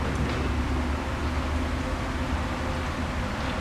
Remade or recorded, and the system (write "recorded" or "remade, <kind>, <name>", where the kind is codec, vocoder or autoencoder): recorded